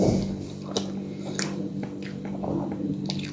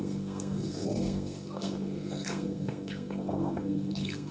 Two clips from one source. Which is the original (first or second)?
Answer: first